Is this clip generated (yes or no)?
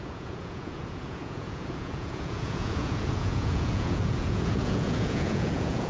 yes